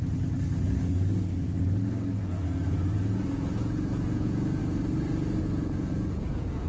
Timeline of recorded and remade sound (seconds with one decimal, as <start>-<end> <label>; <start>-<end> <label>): 0.0-2.2 recorded; 2.2-4.6 remade; 4.6-5.4 recorded; 5.4-6.7 remade